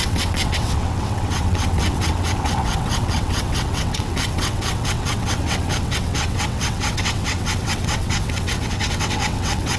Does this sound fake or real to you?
fake